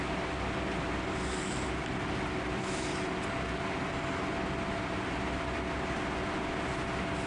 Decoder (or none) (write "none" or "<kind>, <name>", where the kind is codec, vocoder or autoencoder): none